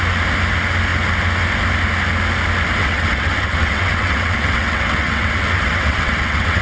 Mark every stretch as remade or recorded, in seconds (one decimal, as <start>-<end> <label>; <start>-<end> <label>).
0.0-2.8 recorded; 2.8-6.6 remade